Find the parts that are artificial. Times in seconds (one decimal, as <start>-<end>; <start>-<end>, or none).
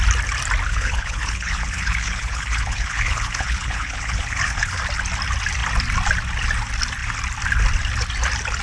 0.7-4.8